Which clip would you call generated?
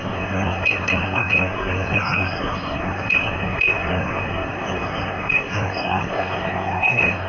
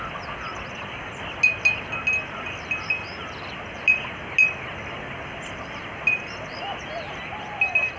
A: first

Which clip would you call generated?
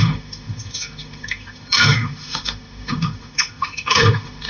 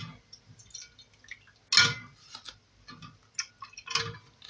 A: first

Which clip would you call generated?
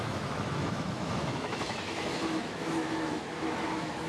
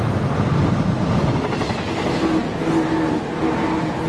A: first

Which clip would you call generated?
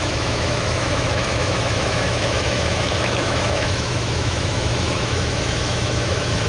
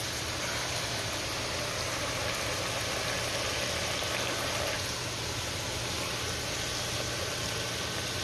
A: first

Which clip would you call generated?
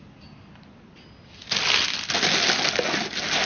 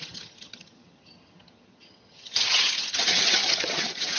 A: second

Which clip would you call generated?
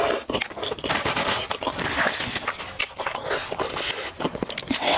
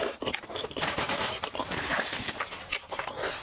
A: second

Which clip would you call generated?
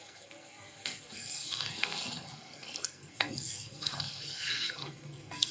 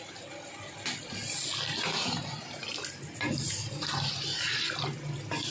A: first